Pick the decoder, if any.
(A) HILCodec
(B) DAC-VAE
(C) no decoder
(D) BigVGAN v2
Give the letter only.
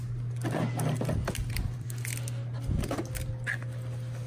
C